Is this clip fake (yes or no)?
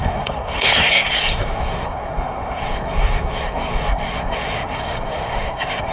yes